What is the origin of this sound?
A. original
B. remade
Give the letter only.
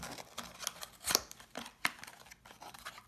A